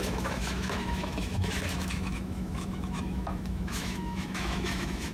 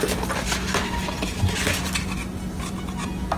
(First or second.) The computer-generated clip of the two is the first